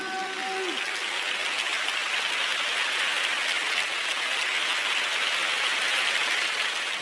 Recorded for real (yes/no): yes